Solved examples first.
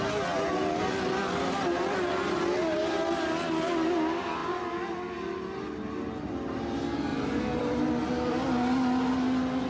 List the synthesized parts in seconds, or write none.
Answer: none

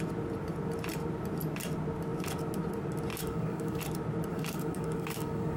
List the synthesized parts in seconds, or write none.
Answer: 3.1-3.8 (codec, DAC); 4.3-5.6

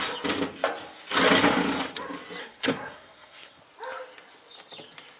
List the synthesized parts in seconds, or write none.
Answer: 2.4-3.6 (codec, SNAC)

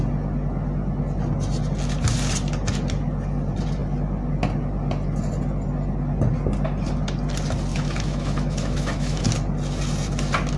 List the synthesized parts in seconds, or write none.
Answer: 7.7-9.3 (autoencoder, DAC-VAE)